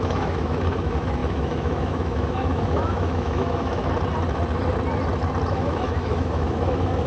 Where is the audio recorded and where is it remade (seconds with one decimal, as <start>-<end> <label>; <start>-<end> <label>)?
0.0-3.8 remade; 3.8-5.5 recorded; 5.5-7.1 remade